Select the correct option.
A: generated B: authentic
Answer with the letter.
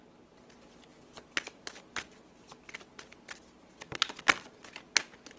B